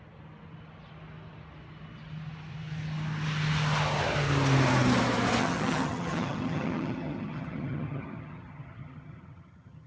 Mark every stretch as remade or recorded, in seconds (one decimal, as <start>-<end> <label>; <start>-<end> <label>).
0.0-5.4 recorded; 5.4-9.9 remade